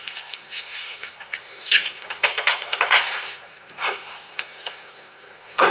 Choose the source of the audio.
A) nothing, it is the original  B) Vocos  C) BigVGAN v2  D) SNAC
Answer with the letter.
D